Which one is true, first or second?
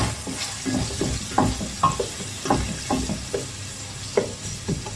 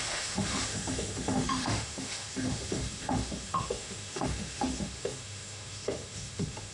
first